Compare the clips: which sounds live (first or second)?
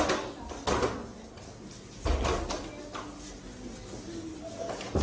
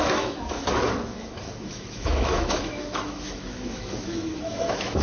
first